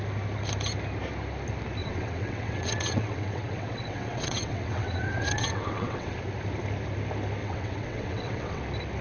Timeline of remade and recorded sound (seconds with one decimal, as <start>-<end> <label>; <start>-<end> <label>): 0.0-1.8 recorded; 1.8-6.2 remade; 6.2-7.4 recorded; 7.4-8.6 remade; 8.6-9.0 recorded

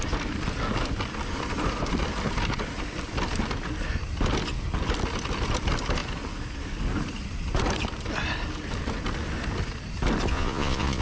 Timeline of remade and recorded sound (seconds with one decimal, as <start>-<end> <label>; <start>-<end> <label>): 0.0-10.3 recorded; 10.3-11.0 remade

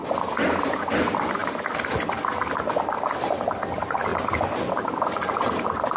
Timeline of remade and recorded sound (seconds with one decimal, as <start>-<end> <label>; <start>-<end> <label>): 0.0-6.0 recorded